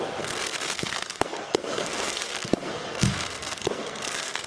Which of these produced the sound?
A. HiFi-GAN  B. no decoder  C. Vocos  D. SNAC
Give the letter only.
D